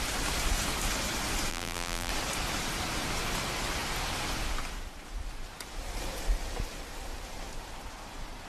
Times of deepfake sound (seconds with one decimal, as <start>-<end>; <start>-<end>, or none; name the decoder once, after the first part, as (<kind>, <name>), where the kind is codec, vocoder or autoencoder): 1.5-2.1 (vocoder, BigVGAN v2)

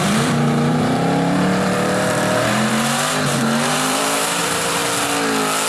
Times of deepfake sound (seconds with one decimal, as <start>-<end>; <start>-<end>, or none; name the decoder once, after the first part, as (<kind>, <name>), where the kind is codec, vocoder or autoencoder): 0.0-4.8 (vocoder, BigVGAN v2)

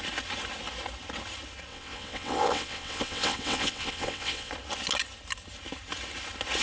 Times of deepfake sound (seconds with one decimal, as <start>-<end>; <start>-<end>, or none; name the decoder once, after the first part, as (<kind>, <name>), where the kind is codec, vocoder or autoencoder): 1.7-4.5 (vocoder, WaveNeXt)